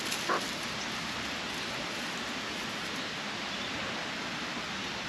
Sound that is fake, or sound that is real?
real